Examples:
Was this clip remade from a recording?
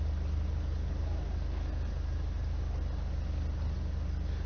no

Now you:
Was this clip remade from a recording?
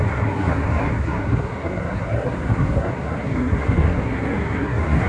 yes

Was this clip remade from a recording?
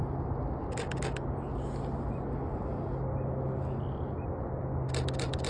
no